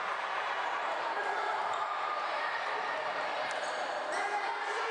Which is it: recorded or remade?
remade